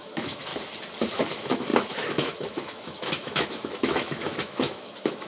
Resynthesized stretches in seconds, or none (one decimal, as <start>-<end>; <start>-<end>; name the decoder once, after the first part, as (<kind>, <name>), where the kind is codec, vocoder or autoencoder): 0.0-0.5 (autoencoder, DAC-VAE); 1.1-5.3